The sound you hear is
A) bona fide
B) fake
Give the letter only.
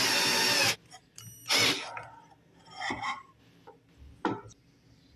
B